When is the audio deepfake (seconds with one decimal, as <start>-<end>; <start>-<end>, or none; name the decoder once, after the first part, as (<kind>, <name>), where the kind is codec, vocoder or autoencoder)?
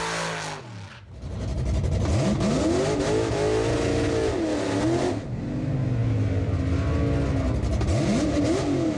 none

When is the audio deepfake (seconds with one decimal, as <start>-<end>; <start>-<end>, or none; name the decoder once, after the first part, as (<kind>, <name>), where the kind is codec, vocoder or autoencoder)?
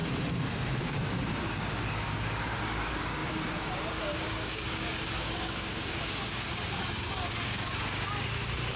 0.8-8.8 (codec, DAC)